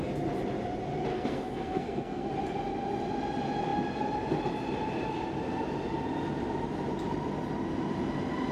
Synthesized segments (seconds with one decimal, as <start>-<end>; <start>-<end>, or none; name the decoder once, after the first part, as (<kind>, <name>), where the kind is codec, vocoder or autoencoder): 1.1-2.3 (codec, SNAC)